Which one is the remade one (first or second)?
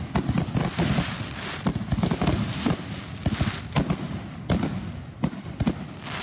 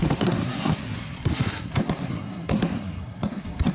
second